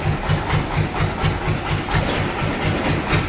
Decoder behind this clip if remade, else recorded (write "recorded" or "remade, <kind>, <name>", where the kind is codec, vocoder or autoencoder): recorded